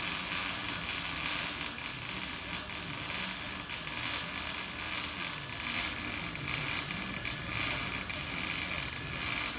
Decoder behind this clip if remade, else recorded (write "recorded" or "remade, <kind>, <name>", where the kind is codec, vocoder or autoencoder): recorded